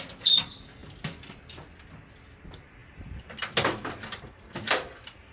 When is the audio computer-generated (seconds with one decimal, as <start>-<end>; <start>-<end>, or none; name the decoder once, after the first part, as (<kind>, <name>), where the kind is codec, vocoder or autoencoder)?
2.8-5.3 (vocoder, BigVGAN v2)